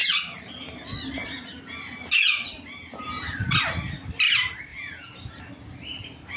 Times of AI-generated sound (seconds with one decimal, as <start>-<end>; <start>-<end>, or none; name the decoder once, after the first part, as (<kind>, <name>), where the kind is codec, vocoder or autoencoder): 4.7-5.4 (vocoder, BigVGAN v2)